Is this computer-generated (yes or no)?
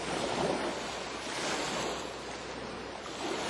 no